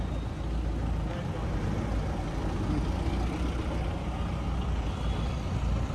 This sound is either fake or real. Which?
real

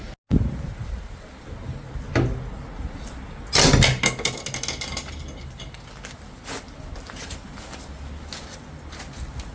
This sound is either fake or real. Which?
real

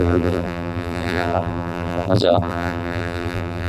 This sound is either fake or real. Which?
fake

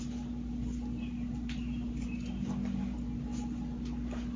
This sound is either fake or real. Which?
real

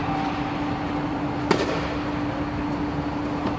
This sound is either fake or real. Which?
fake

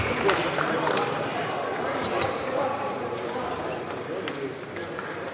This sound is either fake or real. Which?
fake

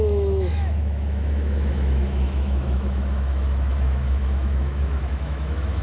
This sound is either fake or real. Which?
fake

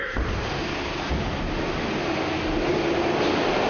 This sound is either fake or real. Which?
real